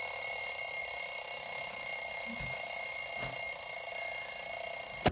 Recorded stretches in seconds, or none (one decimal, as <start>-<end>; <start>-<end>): 0.0-5.1